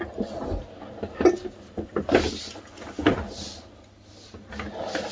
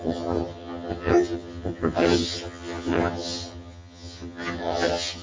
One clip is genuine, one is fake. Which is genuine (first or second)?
first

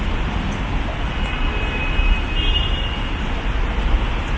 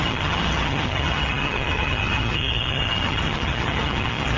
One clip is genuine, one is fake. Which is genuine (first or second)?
first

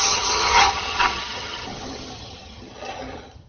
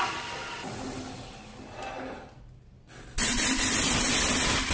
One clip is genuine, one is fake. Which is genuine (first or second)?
second